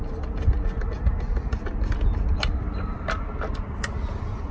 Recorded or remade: recorded